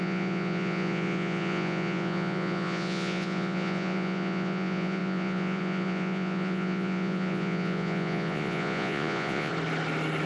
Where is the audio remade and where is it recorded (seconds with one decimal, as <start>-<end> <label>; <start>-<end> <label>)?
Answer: 0.0-9.5 remade; 9.5-10.3 recorded